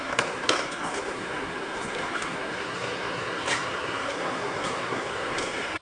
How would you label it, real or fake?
fake